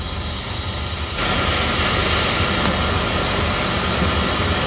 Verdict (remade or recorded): recorded